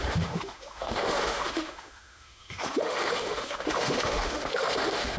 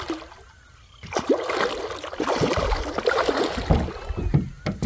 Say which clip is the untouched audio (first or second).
second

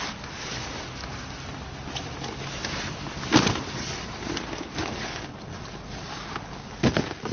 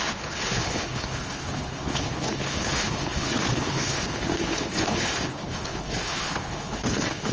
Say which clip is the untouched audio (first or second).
first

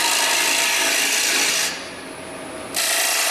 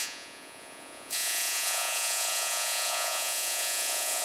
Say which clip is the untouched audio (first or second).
first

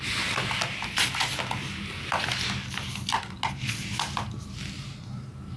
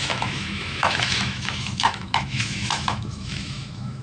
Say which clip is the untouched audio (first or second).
first